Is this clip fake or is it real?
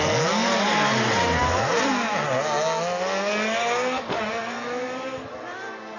real